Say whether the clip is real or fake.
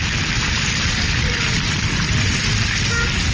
real